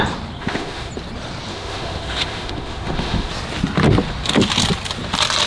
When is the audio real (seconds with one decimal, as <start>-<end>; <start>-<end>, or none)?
0.0-0.4; 0.9-1.5; 3.3-5.5